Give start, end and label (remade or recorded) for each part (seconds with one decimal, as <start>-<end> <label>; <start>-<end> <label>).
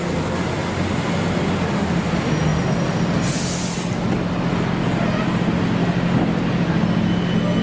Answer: 0.0-7.6 recorded